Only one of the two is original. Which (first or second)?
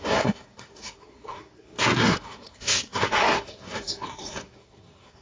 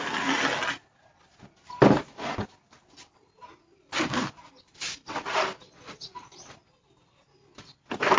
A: second